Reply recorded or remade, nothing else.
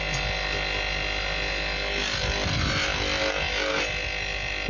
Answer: recorded